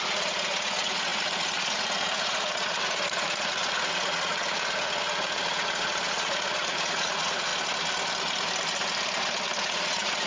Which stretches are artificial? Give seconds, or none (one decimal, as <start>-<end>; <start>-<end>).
0.0-7.5; 9.6-10.3